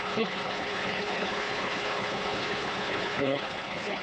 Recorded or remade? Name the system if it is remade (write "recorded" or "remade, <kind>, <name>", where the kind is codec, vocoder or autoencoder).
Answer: remade, codec, HILCodec